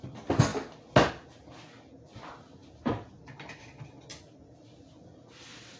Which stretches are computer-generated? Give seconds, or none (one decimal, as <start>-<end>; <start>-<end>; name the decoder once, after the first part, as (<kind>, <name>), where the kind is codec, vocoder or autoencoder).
none